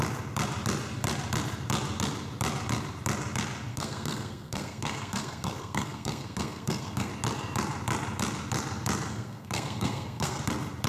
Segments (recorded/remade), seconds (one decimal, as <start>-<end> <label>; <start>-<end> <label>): 0.0-3.7 recorded; 3.7-7.1 remade; 7.1-9.1 recorded; 9.1-10.4 remade; 10.4-10.9 recorded